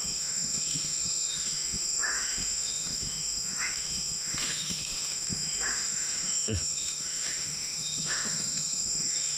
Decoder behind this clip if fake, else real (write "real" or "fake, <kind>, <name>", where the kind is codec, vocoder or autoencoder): fake, autoencoder, DAC-VAE